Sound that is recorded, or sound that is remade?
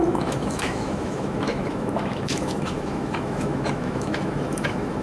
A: remade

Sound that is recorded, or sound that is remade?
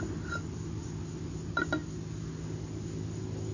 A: recorded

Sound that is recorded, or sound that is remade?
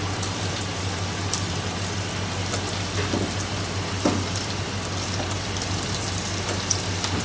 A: recorded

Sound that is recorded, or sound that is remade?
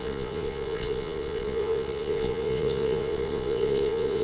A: remade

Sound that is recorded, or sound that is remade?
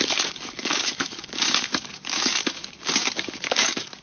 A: remade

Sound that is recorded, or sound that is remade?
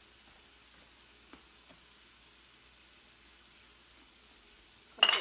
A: recorded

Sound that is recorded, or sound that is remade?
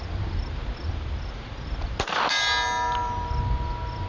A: recorded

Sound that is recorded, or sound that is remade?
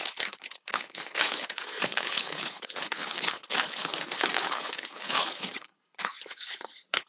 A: remade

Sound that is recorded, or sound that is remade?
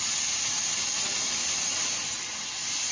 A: recorded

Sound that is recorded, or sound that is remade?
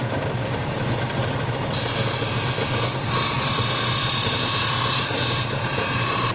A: recorded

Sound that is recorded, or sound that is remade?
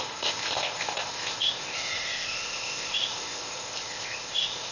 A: remade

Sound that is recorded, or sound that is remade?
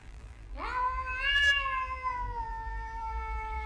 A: remade